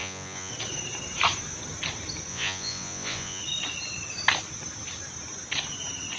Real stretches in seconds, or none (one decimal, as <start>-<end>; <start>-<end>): 0.5-2.3; 3.4-6.2